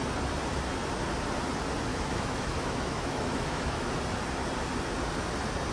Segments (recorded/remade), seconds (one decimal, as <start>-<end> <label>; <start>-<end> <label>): 0.0-1.9 recorded; 1.9-3.9 remade; 3.9-5.7 recorded